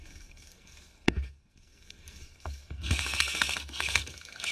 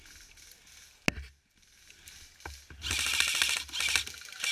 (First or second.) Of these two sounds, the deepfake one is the first